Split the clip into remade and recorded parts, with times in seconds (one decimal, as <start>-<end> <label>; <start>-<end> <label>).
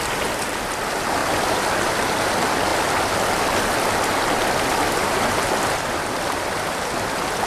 0.0-1.2 recorded; 1.2-2.2 remade; 2.2-7.5 recorded